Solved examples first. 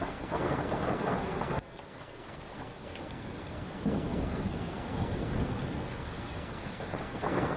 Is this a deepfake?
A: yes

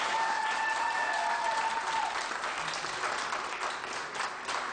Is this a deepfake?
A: no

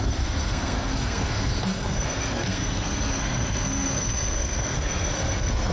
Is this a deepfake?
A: yes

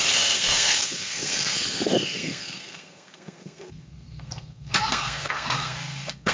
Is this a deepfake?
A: yes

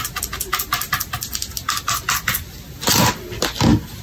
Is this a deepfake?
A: no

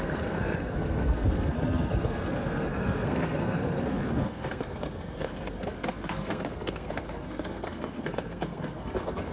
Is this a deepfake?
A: yes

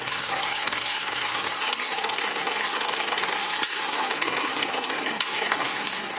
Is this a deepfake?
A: yes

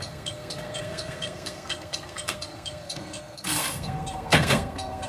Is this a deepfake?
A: yes